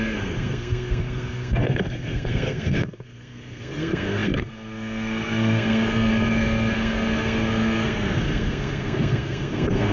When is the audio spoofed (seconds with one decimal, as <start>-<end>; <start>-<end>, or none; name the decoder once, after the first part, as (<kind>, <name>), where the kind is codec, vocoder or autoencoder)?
0.0-9.9 (codec, SNAC)